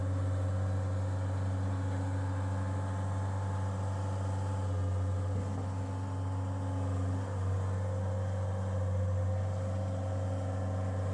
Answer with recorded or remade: recorded